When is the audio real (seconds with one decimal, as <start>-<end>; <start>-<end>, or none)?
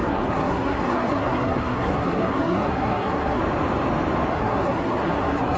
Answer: 3.4-4.3